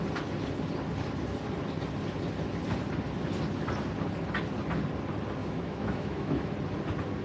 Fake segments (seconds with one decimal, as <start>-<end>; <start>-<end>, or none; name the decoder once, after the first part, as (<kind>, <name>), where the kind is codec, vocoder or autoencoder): 5.4-6.5 (autoencoder, DAC-VAE)

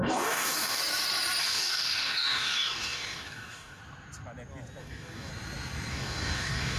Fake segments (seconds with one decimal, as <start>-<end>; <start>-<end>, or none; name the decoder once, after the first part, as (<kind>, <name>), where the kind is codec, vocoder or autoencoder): 0.0-0.8 (codec, DAC); 1.4-3.8; 4.8-5.3; 5.9-6.8

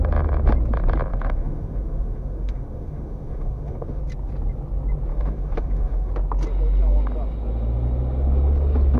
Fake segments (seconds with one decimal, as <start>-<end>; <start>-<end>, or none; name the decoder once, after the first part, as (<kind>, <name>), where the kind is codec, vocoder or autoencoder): 1.1-4.0 (autoencoder, DAC-VAE); 5.1-6.1